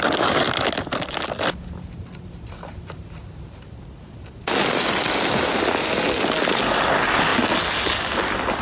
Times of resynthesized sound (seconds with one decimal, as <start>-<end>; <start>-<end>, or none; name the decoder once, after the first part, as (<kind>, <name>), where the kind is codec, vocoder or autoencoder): none